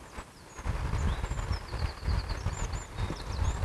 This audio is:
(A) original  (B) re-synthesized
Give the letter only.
A